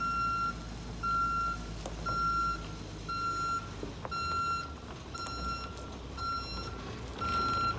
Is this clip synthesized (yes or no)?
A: no